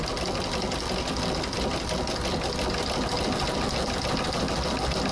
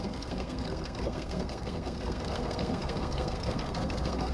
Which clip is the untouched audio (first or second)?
first